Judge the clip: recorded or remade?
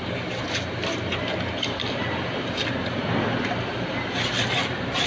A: recorded